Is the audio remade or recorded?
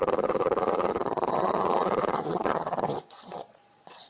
remade